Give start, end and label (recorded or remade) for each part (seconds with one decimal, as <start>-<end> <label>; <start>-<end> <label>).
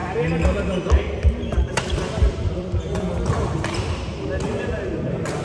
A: 0.0-2.3 recorded; 2.3-5.4 remade